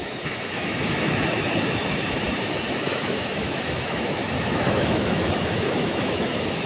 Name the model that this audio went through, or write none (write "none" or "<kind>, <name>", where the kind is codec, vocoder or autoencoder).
autoencoder, DAC-VAE